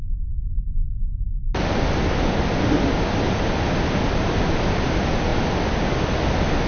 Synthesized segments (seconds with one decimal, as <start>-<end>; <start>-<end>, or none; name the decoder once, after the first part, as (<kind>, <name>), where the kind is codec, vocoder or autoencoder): none

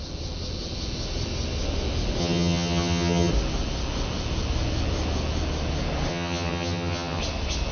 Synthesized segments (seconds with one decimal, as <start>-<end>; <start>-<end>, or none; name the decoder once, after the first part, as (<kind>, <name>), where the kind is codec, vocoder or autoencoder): 2.2-3.3 (vocoder, HiFi-GAN); 6.1-7.2

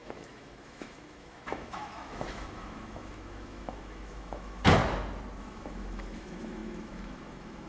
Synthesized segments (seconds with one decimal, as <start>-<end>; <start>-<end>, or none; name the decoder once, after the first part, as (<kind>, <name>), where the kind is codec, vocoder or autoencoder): 0.0-4.8 (autoencoder, DAC-VAE); 5.4-7.7